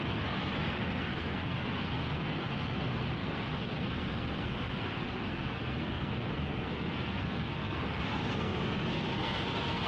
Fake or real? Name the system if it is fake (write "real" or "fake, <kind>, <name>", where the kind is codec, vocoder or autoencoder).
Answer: fake, codec, SNAC